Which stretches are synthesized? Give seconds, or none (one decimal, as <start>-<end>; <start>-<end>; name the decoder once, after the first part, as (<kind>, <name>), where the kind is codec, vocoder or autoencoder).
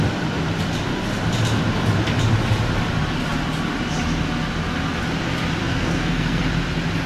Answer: 5.6-6.4 (codec, SNAC)